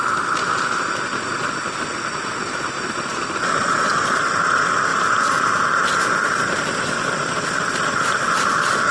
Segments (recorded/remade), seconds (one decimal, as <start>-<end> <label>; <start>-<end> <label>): 0.0-4.9 recorded; 4.9-5.4 remade; 5.4-5.9 recorded; 5.9-8.5 remade; 8.5-8.9 recorded

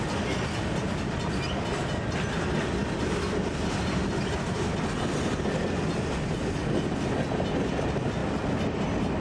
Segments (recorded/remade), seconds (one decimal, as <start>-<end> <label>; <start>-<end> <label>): 0.0-9.2 recorded

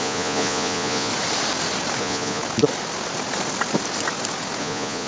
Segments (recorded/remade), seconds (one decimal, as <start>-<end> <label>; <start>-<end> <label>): 0.0-1.1 remade; 1.1-2.0 recorded; 2.0-2.4 remade; 2.4-4.6 recorded; 4.6-5.1 remade

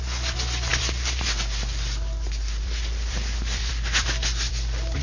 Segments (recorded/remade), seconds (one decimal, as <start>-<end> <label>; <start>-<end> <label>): 0.0-5.0 recorded

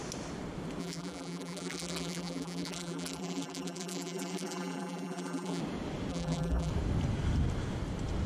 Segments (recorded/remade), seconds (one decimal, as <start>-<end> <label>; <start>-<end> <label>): 0.0-0.8 recorded; 0.8-5.6 remade; 5.6-6.1 recorded; 6.1-6.7 remade; 6.7-8.3 recorded

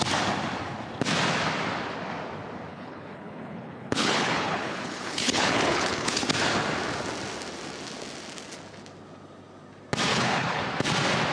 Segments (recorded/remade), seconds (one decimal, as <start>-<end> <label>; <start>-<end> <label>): 0.0-2.7 recorded; 2.7-6.2 remade; 6.2-10.1 recorded; 10.1-10.6 remade; 10.6-11.3 recorded

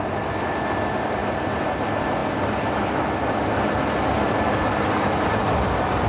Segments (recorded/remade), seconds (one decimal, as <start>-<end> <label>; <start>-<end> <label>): 0.0-1.2 recorded; 1.2-1.8 remade; 1.8-6.1 recorded